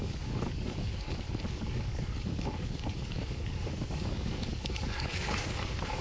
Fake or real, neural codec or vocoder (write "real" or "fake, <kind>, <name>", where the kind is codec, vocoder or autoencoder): fake, codec, DAC